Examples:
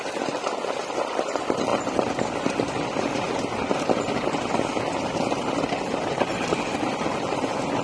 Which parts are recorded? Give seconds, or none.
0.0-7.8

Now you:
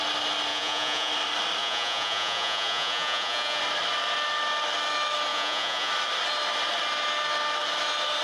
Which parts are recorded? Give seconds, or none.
0.0-0.5; 1.1-1.6; 3.6-5.3; 5.9-8.2

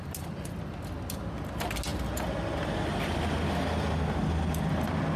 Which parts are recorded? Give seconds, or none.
0.0-5.2

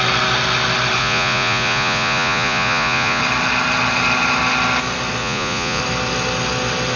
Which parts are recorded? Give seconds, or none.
0.0-1.0; 3.2-5.2; 5.8-7.0

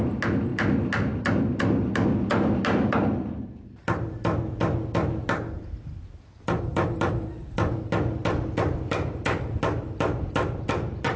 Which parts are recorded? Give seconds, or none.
0.0-11.2